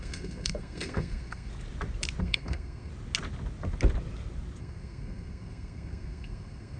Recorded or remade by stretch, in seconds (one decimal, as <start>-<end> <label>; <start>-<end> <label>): 0.0-1.5 remade; 1.5-2.2 recorded; 2.2-2.9 remade; 2.9-4.6 recorded; 4.6-6.8 remade